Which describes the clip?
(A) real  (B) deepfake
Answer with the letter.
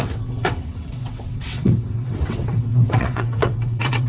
B